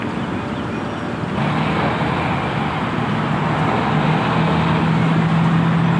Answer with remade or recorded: recorded